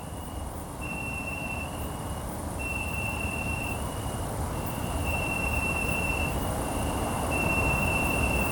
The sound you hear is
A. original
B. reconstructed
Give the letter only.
B